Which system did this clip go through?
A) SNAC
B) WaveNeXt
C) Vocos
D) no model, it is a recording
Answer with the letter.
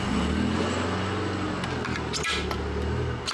D